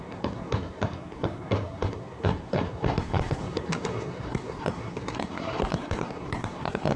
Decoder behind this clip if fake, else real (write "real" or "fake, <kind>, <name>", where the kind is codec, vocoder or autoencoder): fake, codec, SNAC